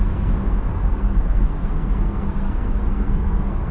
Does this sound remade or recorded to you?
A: remade